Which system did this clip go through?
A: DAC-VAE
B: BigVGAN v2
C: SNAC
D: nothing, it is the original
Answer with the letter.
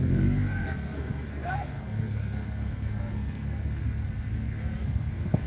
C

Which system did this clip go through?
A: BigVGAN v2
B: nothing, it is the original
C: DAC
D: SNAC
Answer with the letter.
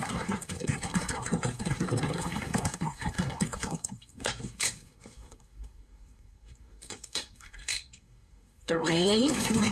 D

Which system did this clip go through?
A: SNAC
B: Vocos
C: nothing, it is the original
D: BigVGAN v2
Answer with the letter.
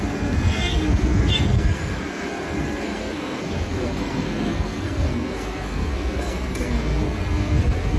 A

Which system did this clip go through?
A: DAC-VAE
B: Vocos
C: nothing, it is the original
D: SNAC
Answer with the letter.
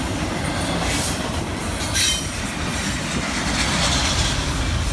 C